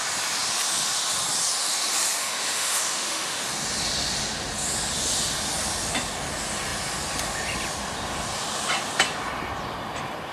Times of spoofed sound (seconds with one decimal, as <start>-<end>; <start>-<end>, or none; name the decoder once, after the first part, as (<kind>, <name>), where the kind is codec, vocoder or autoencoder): 2.2-3.4 (autoencoder, DAC-VAE)